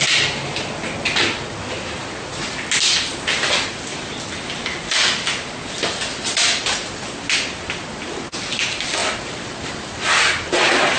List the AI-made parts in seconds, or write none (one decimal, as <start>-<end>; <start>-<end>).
none